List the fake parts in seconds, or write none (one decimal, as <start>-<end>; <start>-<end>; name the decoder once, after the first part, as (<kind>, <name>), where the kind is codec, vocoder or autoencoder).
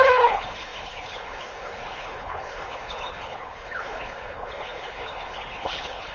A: 0.0-6.1 (codec, HILCodec)